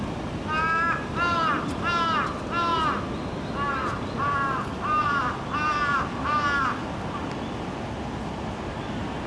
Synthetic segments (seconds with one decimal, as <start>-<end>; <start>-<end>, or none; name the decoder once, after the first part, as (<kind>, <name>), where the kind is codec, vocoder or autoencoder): none